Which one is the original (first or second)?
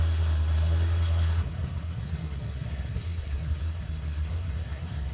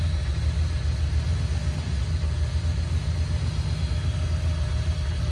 second